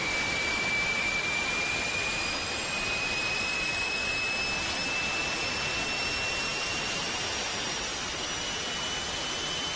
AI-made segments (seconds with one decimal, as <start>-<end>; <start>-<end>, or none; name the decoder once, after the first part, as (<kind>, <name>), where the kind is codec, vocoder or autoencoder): 0.0-4.1 (vocoder, BigVGAN v2); 6.5-7.4